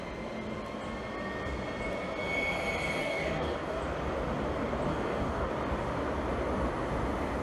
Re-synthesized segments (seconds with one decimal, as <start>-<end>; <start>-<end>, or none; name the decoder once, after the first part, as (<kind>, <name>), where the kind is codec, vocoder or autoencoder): 3.0-3.8 (codec, DAC); 4.9-5.5